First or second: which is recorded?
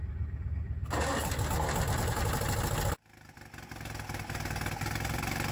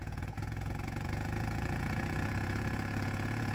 first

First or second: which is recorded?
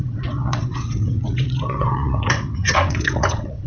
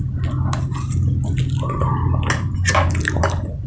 second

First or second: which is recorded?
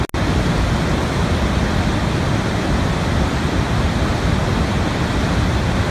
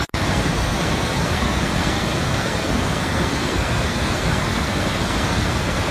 first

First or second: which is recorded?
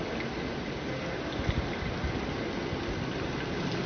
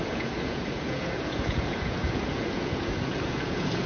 first